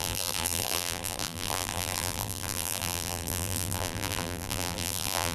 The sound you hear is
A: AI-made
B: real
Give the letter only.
A